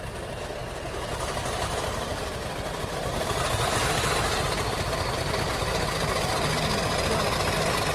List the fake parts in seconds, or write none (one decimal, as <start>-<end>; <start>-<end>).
none

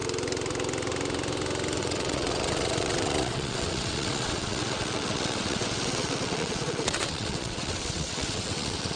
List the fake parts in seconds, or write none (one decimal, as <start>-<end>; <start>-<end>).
1.8-9.0

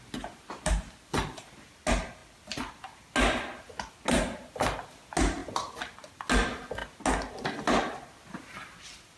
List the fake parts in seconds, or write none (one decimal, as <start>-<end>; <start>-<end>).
none

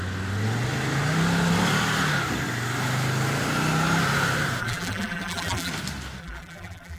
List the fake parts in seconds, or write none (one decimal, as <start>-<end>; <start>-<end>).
4.6-5.7; 6.2-7.0

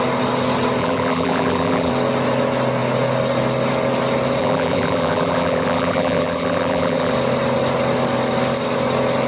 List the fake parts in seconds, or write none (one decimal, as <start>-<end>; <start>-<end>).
0.8-1.9; 4.4-7.1